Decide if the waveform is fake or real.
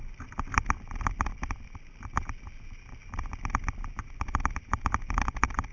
real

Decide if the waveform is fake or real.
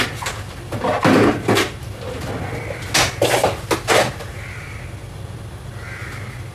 real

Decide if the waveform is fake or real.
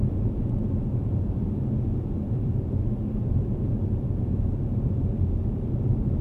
fake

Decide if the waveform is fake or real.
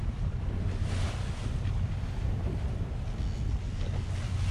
real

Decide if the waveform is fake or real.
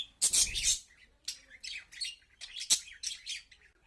real